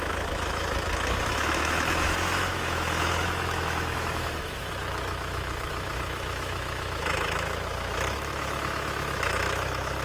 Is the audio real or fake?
fake